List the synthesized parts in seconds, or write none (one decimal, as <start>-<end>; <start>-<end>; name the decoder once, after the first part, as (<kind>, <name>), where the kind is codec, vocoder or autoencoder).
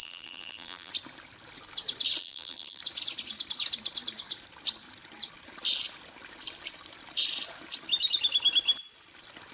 0.0-0.9 (vocoder, BigVGAN v2); 2.2-2.8